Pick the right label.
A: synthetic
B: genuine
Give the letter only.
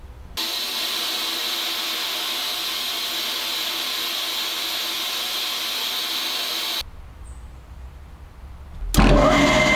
B